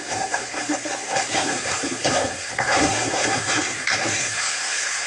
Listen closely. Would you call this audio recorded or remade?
remade